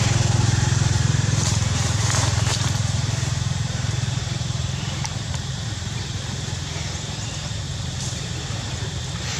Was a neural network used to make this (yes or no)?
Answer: yes